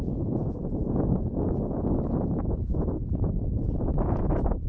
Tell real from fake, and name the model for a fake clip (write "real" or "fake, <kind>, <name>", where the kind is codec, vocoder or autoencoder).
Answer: fake, vocoder, Vocos